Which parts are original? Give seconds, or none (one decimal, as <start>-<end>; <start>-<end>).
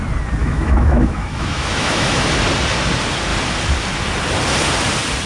0.0-0.4; 2.3-5.3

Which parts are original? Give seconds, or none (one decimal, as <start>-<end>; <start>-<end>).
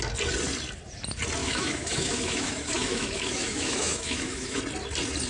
0.0-1.4; 4.6-5.3